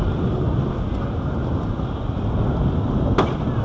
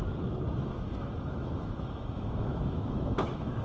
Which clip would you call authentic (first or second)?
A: first